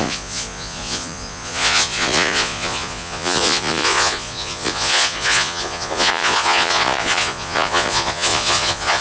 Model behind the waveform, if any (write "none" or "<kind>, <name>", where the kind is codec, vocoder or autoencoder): vocoder, Vocos